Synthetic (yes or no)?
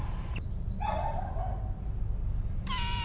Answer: no